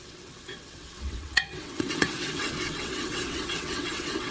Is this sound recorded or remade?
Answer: remade